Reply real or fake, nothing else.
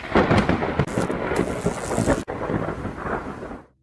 real